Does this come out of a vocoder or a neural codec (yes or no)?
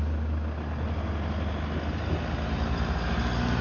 no